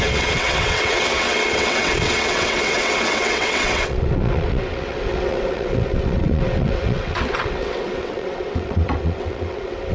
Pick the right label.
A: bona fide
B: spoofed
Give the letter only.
B